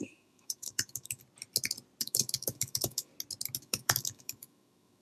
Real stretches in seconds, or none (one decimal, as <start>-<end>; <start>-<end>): 1.2-2.0; 3.1-3.6